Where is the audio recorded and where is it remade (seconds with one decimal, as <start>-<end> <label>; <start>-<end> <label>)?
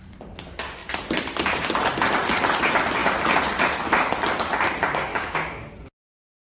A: 0.0-5.1 recorded; 5.1-5.7 remade; 5.7-6.5 recorded